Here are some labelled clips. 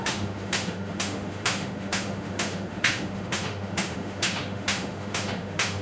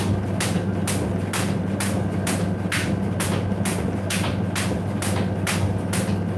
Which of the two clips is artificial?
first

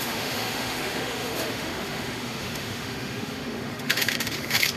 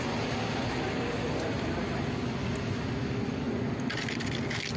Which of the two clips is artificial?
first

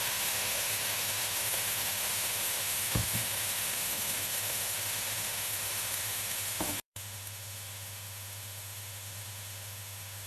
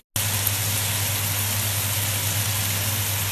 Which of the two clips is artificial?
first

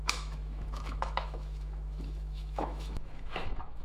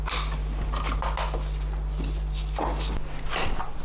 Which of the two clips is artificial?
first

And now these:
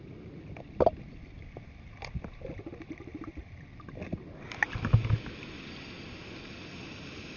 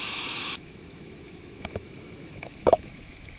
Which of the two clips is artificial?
second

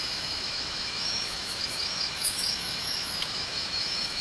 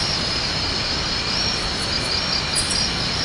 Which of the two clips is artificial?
first